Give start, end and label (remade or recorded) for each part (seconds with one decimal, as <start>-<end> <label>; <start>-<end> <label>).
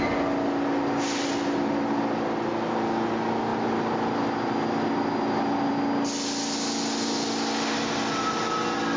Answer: 0.0-9.0 recorded